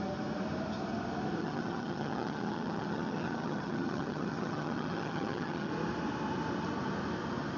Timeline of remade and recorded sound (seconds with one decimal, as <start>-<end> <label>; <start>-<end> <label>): 0.0-1.4 recorded; 1.4-5.7 remade; 5.7-7.6 recorded